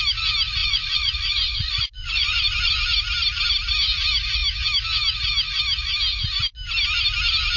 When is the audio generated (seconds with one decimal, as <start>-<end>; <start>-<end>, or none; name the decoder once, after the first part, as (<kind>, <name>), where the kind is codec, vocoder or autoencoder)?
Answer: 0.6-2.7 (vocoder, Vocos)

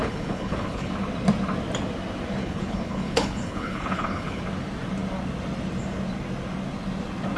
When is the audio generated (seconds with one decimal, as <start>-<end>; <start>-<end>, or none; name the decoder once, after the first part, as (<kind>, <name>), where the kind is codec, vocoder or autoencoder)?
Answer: 0.0-0.9 (codec, HILCodec); 2.4-4.4

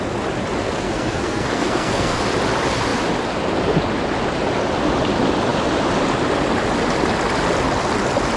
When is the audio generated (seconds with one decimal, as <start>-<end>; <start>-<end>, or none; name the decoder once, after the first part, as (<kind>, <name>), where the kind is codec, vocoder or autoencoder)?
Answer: 0.6-2.2 (codec, SNAC)

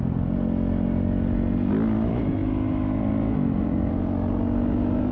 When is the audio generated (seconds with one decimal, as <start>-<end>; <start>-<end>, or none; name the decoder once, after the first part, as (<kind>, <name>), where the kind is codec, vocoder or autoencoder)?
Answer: none

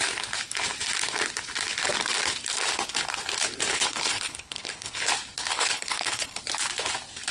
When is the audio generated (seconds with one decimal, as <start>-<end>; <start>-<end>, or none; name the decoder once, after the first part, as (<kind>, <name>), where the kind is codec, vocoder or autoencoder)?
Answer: 3.7-5.1 (codec, HILCodec); 5.5-6.4

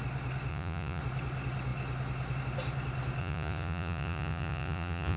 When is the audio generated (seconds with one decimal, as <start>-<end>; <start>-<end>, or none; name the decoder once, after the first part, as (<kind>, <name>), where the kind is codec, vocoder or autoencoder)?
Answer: 0.5-1.0 (vocoder, Vocos); 3.2-5.2